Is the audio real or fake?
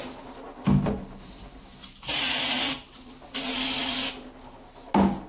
real